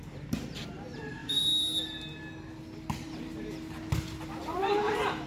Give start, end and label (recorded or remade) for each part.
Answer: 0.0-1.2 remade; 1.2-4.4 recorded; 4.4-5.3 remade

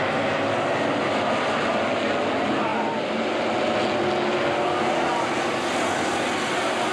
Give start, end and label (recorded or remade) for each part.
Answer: 0.0-6.9 recorded

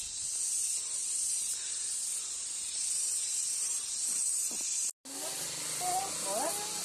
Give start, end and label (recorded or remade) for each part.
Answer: 0.0-1.0 recorded; 1.0-3.9 remade; 3.9-6.8 recorded